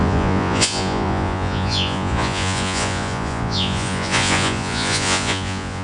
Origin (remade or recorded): remade